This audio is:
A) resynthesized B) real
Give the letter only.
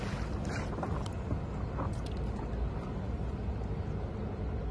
B